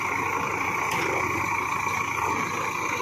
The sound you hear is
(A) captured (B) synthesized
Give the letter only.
B